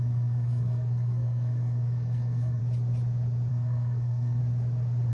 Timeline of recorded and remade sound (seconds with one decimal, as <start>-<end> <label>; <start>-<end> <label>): 0.0-2.6 remade; 2.6-3.5 recorded; 3.5-4.4 remade; 4.4-5.1 recorded